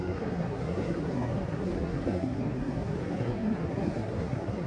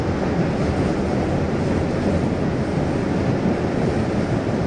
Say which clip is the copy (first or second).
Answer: first